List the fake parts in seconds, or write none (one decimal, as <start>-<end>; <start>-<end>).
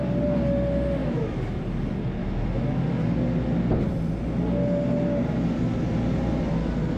1.0-1.6; 2.2-2.8